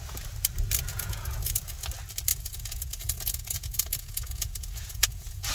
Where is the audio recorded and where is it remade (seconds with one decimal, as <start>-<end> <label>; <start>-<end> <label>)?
0.0-0.9 recorded; 0.9-1.6 remade; 1.6-2.3 recorded; 2.3-5.5 remade